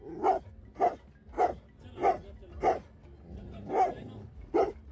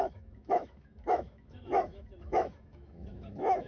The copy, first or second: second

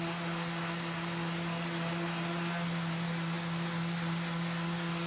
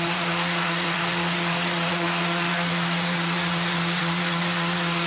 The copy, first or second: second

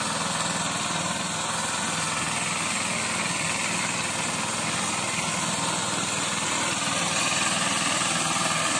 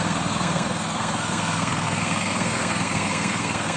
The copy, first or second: second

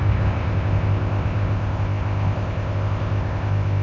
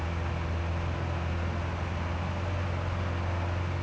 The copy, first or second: first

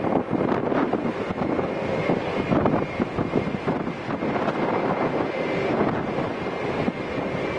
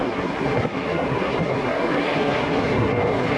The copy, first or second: second